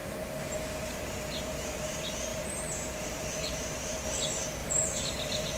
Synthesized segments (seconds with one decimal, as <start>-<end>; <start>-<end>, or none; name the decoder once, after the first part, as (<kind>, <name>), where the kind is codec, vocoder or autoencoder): 0.0-0.6 (vocoder, BigVGAN v2); 2.3-4.0; 4.6-5.6